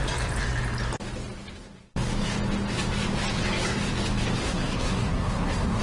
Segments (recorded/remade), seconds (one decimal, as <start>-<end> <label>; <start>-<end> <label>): 0.0-4.4 recorded; 4.4-5.8 remade